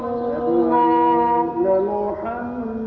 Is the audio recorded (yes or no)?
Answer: yes